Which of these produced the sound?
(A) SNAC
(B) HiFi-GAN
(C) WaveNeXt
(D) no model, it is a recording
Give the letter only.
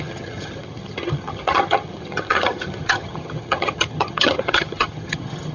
B